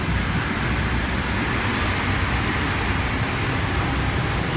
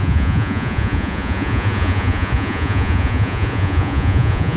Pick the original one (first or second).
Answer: first